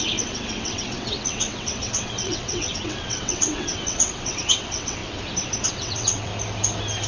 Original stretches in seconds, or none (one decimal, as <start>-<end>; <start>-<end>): 5.0-5.7; 6.3-7.1